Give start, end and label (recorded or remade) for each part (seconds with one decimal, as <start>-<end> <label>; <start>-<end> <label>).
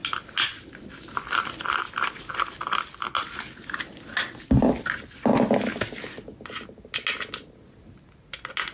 0.0-8.7 recorded